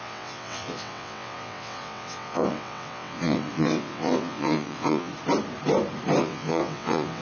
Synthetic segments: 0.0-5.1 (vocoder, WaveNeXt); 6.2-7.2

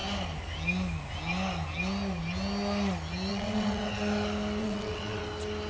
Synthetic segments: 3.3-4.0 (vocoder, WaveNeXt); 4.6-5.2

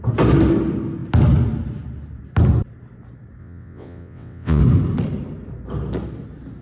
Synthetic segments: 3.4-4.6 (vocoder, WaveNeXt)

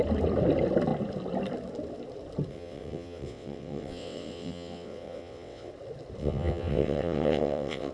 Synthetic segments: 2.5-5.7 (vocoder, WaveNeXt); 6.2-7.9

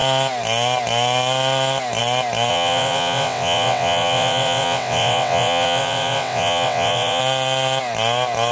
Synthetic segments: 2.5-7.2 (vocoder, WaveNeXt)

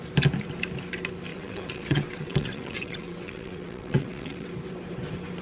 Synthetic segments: 1.3-4.5 (vocoder, WaveNeXt)